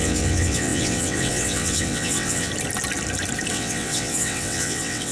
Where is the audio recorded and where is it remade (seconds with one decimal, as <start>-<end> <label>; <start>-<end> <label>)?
0.0-2.5 remade; 2.5-3.5 recorded; 3.5-5.1 remade